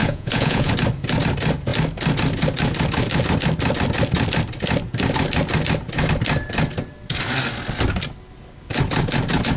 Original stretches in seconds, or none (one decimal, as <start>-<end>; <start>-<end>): 0.7-9.6